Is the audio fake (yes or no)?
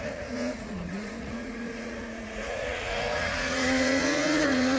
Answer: yes